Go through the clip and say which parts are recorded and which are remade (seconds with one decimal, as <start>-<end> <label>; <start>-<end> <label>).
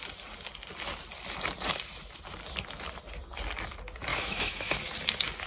0.0-4.1 recorded; 4.1-4.8 remade; 4.8-5.5 recorded